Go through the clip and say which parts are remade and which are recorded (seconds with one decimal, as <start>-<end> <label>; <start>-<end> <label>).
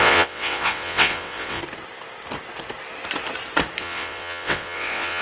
0.0-1.6 remade; 1.6-3.8 recorded; 3.8-5.2 remade